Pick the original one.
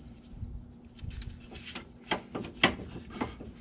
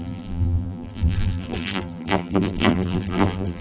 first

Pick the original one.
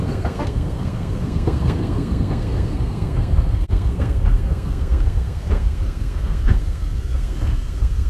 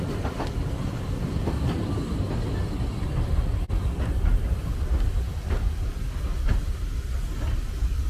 second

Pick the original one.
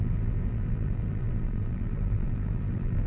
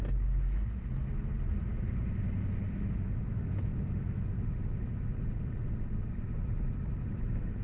second